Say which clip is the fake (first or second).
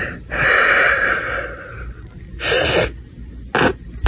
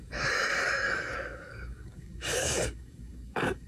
second